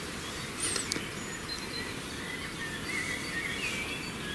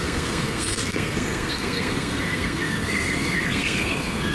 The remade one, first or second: second